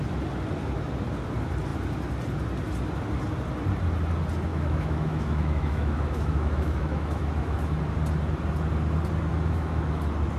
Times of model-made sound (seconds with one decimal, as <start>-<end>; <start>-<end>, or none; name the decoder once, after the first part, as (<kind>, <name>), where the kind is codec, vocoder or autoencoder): 4.5-7.8 (autoencoder, DAC-VAE); 9.3-10.0